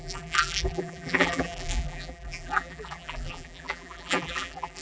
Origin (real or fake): fake